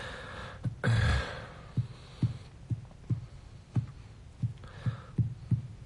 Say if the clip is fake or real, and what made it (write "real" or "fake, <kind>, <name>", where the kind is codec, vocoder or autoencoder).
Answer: real